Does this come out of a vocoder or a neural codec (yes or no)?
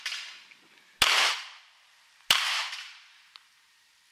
no